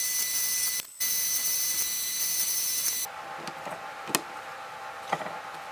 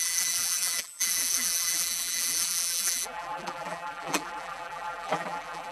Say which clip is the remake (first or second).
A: second